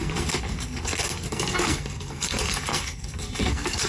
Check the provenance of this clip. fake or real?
fake